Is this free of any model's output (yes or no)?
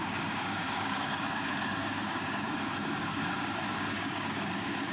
no